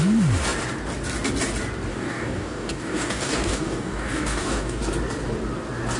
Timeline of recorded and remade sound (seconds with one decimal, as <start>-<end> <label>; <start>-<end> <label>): 0.0-1.9 recorded; 1.9-4.8 remade; 4.8-6.0 recorded